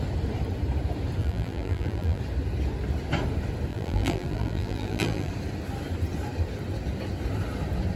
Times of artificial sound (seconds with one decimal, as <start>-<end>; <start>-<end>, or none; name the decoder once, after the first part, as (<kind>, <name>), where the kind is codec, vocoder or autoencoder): 1.2-2.2 (vocoder, BigVGAN v2); 3.7-5.3